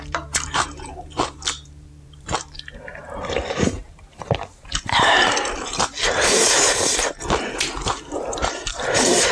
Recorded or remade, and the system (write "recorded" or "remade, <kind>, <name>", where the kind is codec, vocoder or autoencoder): remade, vocoder, BigVGAN v2